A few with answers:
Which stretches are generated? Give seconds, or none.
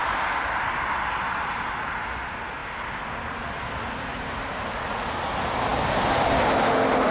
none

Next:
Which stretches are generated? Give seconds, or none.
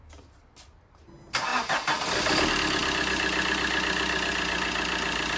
none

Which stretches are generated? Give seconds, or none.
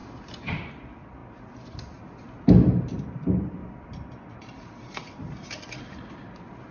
0.5-1.2 (vocoder, BigVGAN v2); 3.0-3.6; 5.1-6.7